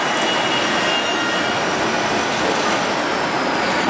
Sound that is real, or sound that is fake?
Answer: real